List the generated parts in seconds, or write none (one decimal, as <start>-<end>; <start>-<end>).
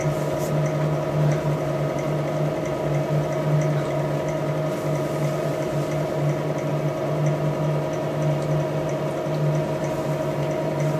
0.0-11.0